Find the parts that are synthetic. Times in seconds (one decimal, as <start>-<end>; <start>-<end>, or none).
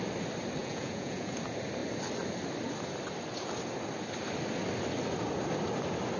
0.6-1.4